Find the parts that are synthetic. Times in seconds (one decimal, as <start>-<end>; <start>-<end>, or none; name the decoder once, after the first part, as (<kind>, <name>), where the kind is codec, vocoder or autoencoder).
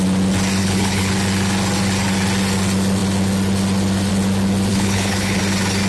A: 0.6-1.1 (codec, HILCodec); 4.7-5.4